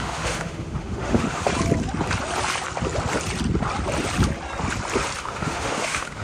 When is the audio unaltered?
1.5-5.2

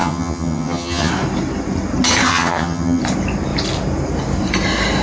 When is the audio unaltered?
1.1-2.3; 3.0-5.0

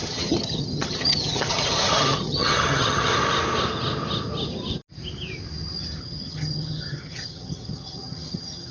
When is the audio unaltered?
3.1-6.0

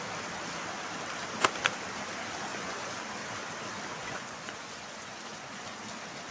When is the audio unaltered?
0.0-2.5; 3.1-4.0; 5.8-6.3